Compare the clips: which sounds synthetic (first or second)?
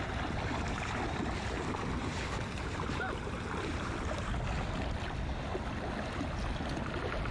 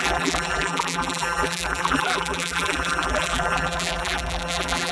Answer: second